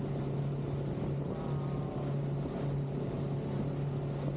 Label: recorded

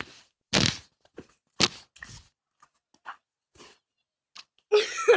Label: recorded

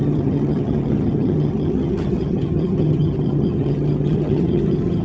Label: remade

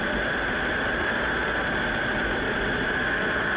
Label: recorded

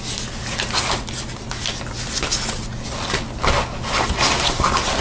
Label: recorded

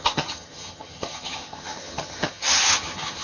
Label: remade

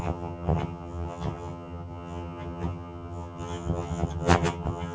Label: remade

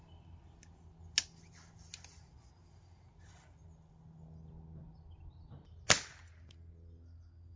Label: recorded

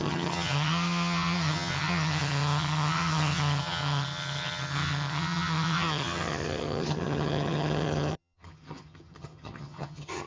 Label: remade